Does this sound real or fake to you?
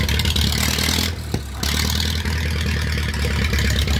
real